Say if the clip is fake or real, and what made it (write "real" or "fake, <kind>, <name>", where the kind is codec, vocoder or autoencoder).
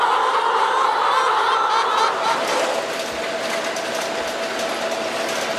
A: real